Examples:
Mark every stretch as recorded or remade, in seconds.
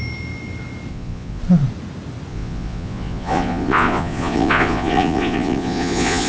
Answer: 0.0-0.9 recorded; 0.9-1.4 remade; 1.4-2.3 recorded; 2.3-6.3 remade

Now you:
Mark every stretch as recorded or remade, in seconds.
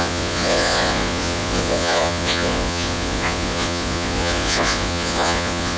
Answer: 0.0-5.8 remade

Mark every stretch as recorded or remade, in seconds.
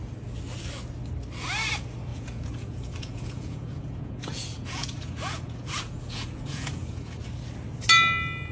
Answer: 0.0-2.1 recorded; 2.1-7.2 remade; 7.2-8.5 recorded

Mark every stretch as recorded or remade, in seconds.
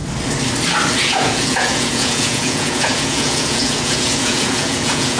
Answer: 0.0-0.9 recorded; 0.9-5.2 remade